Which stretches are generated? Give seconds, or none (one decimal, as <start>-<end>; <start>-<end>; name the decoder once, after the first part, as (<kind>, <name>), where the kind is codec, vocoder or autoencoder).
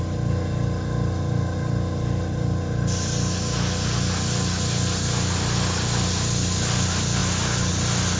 none